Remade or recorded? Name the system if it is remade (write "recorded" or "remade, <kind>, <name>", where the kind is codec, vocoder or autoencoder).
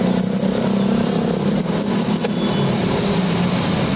recorded